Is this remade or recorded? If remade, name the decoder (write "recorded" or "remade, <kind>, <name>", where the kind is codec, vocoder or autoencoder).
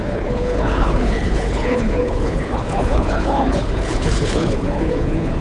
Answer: remade, codec, HILCodec